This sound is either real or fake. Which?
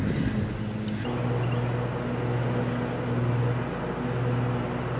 real